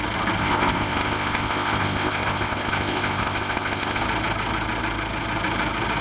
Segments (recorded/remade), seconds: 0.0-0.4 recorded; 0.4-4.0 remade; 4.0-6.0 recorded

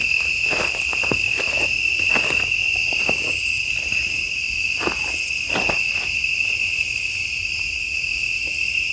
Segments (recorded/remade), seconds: 0.0-8.9 recorded

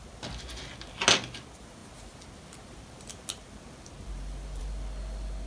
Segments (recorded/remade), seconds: 0.0-5.5 recorded

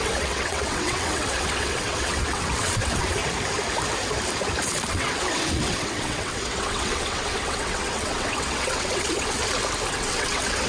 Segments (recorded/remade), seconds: 0.0-3.2 remade; 3.2-4.9 recorded; 4.9-9.4 remade; 9.4-9.9 recorded; 9.9-10.7 remade

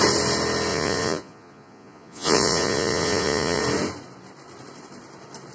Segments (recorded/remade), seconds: 0.0-0.7 recorded; 0.7-3.6 remade; 3.6-5.5 recorded

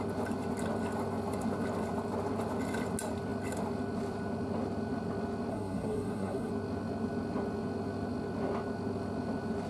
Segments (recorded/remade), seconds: 0.0-5.5 recorded; 5.5-6.5 remade; 6.5-9.7 recorded

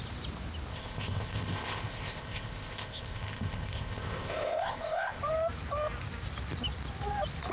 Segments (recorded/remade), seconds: 0.0-0.7 recorded; 0.7-5.2 remade; 5.2-7.5 recorded